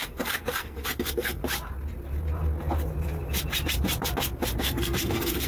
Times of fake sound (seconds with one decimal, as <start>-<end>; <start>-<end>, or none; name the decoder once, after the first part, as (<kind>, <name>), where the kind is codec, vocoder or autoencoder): 0.0-1.4 (codec, SNAC); 4.6-5.5